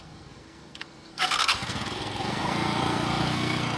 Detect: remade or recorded remade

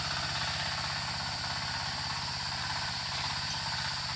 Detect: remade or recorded recorded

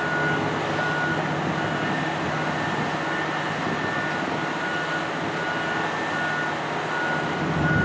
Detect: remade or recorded recorded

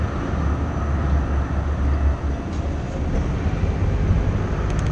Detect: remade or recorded recorded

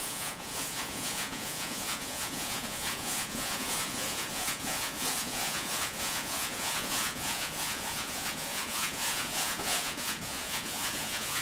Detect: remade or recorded remade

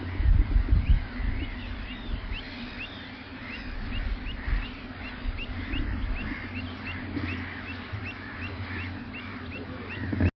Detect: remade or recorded recorded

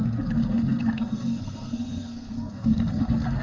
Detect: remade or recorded remade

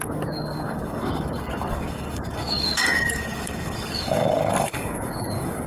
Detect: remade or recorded remade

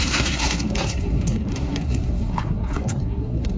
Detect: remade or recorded remade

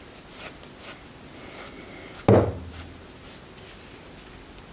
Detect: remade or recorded recorded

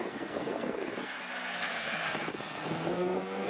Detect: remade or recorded remade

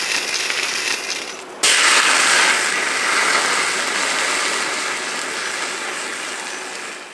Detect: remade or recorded recorded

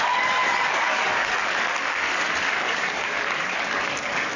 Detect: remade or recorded remade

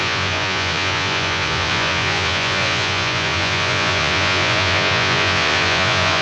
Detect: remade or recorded remade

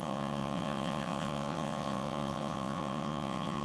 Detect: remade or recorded remade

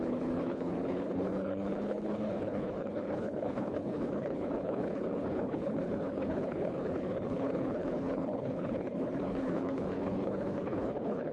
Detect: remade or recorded remade